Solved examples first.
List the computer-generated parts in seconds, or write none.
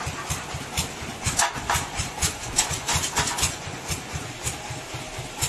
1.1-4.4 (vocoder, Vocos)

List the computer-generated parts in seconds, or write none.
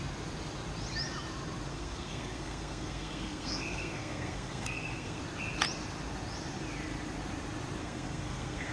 1.7-5.2 (codec, SNAC); 7.8-8.7